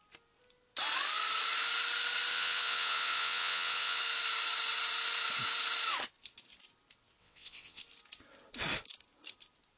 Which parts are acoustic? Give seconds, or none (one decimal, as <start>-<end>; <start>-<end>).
0.0-2.3; 4.0-7.2; 7.8-9.8